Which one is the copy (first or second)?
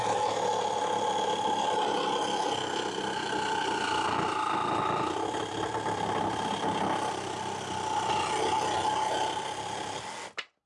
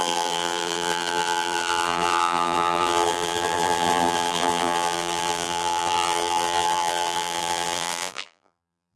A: second